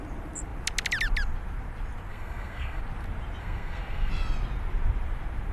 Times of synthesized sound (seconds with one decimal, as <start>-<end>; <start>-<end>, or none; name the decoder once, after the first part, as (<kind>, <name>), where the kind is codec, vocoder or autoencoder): 2.1-2.8 (codec, SNAC); 3.4-4.1